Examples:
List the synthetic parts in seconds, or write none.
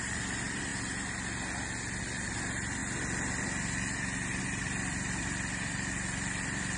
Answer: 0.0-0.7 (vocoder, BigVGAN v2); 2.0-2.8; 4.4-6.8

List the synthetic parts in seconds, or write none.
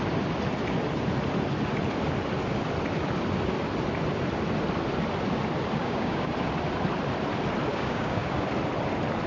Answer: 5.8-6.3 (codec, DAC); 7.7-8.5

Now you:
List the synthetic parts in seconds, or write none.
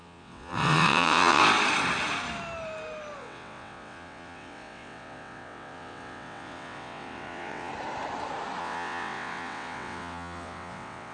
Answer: 0.0-1.4 (vocoder, WaveNeXt); 3.2-7.7; 8.6-11.1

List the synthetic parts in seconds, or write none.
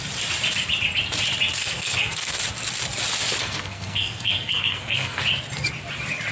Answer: 1.6-2.4 (codec, SNAC); 3.4-5.2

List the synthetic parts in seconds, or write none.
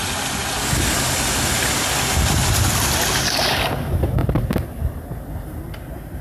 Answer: none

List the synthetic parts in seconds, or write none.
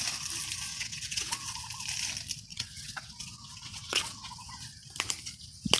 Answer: 0.7-1.5 (vocoder, WaveNeXt); 2.5-4.5